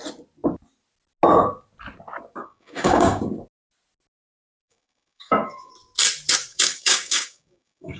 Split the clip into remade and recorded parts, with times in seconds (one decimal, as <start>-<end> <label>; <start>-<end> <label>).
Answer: 0.0-2.4 recorded; 2.4-3.2 remade; 3.2-4.3 recorded; 4.3-5.7 remade; 5.7-6.5 recorded; 6.5-8.0 remade